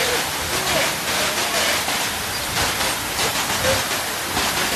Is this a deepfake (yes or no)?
no